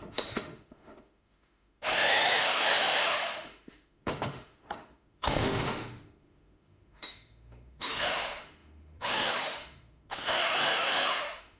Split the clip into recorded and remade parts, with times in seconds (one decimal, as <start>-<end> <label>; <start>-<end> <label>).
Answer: 0.0-11.6 remade